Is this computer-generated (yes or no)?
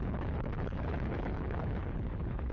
yes